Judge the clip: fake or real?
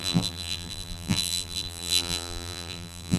fake